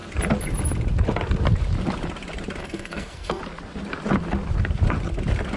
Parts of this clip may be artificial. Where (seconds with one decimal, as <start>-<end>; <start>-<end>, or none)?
2.6-3.4